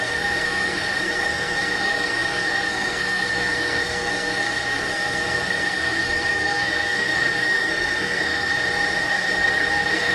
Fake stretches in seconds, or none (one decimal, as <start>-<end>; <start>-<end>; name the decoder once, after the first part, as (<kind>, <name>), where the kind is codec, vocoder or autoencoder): 0.0-8.5 (codec, SNAC); 9.0-10.1